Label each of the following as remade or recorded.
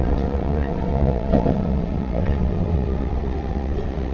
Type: remade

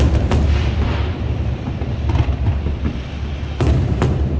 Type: recorded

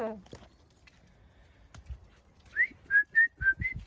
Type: recorded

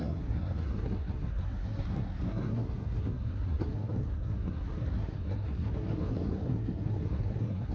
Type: remade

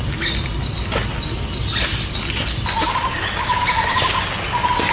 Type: recorded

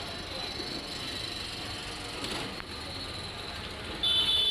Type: recorded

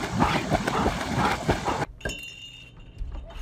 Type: recorded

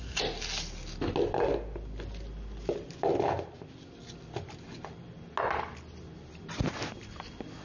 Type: recorded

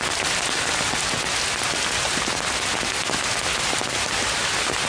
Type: recorded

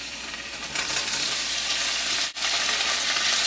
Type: remade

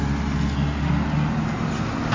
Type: recorded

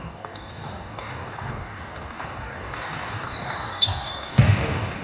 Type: remade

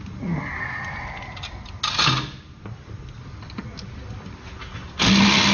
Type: recorded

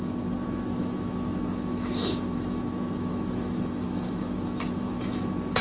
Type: remade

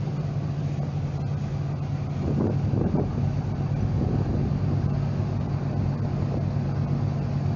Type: recorded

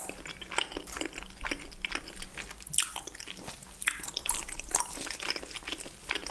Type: recorded